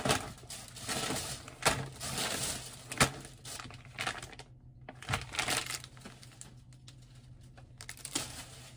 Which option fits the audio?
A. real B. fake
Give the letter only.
A